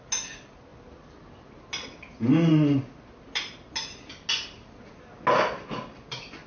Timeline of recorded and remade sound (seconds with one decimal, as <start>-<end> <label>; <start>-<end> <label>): 0.0-6.5 recorded